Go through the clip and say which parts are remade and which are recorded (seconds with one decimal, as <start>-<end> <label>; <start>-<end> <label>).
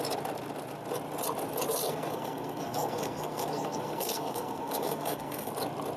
0.0-1.9 recorded; 1.9-5.5 remade; 5.5-6.0 recorded